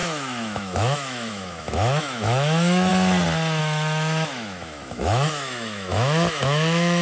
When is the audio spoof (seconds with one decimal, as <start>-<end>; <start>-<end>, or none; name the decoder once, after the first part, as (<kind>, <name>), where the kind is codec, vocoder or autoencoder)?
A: 0.0-2.9 (autoencoder, DAC-VAE); 3.6-7.0